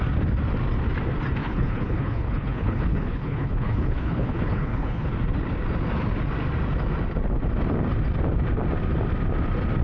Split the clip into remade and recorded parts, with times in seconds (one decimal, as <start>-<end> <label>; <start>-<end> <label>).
0.0-1.4 recorded; 1.4-5.1 remade; 5.1-9.8 recorded